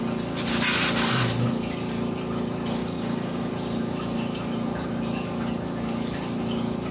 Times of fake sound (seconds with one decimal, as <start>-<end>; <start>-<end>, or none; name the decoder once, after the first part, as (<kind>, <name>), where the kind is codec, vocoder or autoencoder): 2.8-3.5 (codec, DAC)